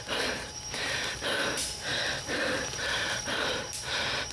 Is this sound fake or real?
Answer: fake